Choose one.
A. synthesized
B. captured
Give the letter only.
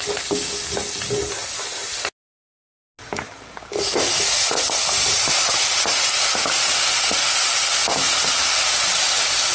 B